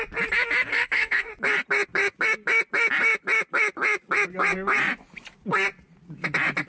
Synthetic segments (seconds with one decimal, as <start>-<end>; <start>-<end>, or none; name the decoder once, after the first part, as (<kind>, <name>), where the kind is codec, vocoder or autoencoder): 0.7-1.3 (codec, SNAC)